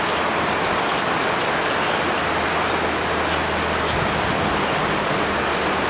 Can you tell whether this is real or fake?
real